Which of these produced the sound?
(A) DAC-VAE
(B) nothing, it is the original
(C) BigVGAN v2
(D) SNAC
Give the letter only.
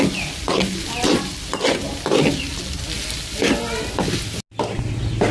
B